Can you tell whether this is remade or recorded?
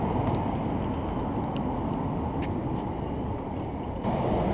recorded